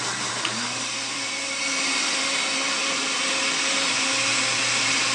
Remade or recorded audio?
recorded